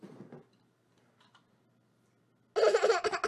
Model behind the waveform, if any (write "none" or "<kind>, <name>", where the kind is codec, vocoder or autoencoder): none